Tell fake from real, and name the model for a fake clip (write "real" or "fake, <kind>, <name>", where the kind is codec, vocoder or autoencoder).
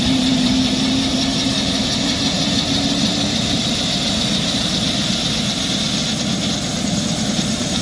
fake, vocoder, BigVGAN v2